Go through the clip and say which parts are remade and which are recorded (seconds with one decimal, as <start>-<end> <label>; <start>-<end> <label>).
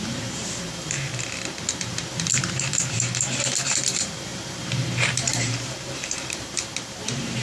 0.0-1.1 remade; 1.1-1.7 recorded; 1.7-7.4 remade